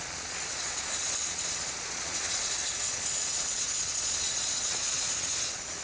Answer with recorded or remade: remade